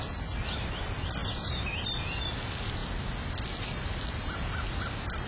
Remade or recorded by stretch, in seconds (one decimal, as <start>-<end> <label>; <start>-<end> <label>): 0.0-5.3 recorded